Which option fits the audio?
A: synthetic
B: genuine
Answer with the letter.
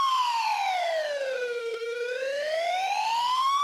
A